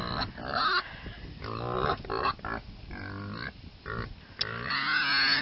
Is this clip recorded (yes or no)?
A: yes